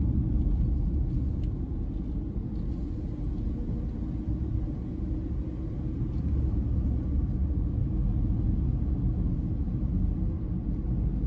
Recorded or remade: recorded